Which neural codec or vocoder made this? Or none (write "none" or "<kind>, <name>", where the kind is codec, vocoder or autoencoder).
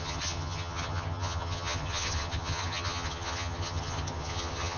vocoder, HiFi-GAN